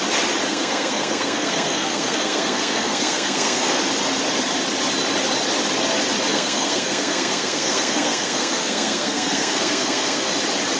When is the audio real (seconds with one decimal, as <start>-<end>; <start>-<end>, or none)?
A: 0.0-0.5; 3.8-6.3; 10.3-10.8